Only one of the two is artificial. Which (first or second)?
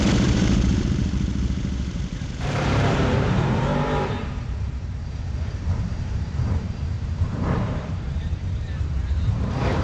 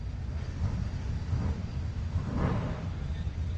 first